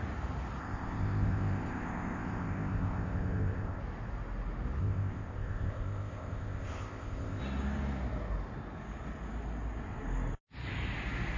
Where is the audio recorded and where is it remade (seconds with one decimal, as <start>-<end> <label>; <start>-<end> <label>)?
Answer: 0.0-0.6 recorded; 0.6-3.8 remade; 3.8-4.8 recorded; 4.8-7.4 remade; 7.4-11.4 recorded